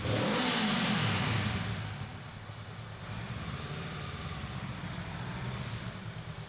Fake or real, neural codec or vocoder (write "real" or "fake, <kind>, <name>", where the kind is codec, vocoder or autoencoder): real